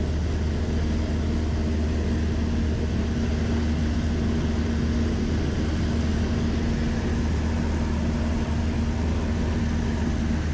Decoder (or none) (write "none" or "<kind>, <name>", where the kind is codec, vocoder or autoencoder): none